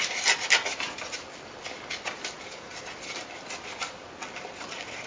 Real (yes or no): yes